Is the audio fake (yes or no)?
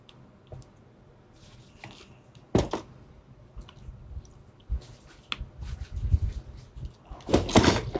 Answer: no